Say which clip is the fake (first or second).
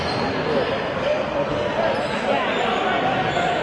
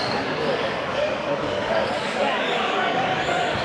second